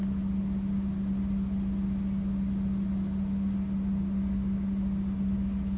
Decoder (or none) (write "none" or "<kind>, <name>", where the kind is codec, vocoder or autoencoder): none